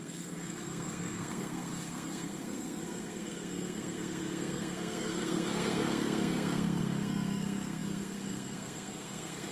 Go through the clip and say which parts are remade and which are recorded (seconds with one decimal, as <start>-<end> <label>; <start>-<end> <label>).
0.0-9.5 remade